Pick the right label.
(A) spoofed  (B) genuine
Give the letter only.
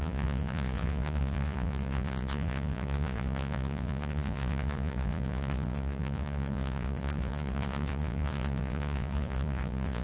A